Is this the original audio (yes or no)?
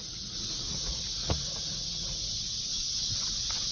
no